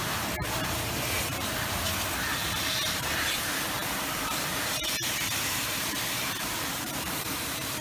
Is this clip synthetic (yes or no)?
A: yes